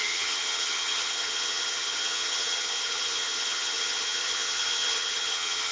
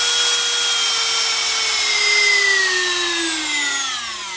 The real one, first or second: second